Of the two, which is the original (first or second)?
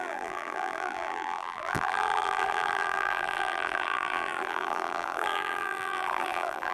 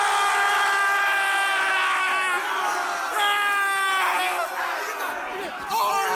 second